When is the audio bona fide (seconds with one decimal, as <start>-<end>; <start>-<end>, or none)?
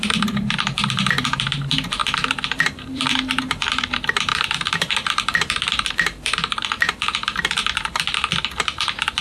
7.6-9.2